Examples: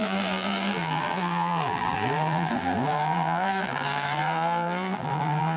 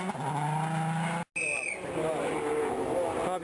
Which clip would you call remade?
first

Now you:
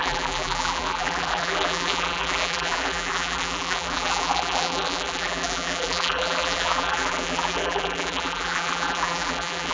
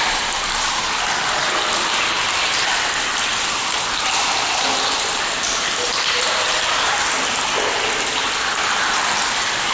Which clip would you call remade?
first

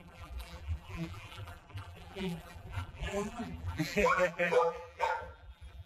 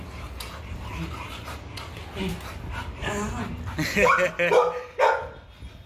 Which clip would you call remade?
first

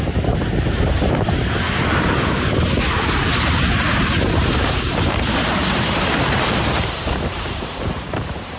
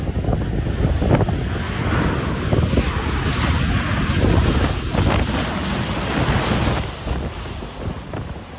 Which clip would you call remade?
first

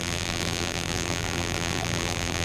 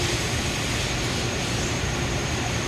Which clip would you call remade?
first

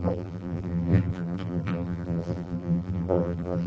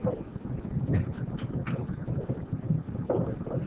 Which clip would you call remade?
first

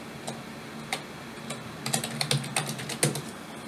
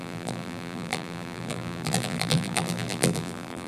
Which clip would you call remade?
second